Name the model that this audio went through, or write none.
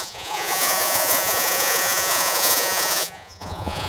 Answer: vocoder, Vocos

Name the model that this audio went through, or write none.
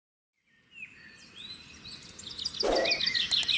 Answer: none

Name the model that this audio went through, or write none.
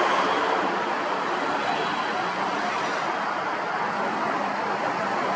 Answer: none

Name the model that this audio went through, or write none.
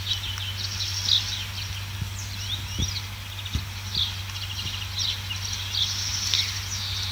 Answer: none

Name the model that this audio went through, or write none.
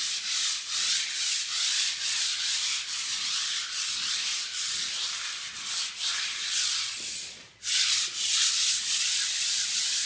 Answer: none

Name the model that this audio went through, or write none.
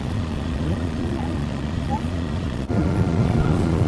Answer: vocoder, Vocos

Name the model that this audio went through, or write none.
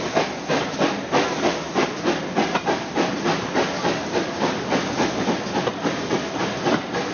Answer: none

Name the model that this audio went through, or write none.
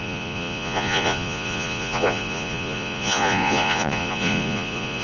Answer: vocoder, Vocos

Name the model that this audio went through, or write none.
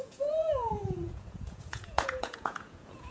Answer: vocoder, Vocos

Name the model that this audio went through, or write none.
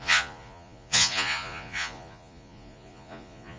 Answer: vocoder, Vocos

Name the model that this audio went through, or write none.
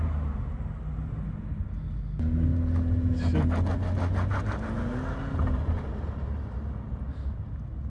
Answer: none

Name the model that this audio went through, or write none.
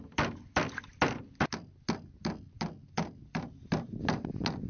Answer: none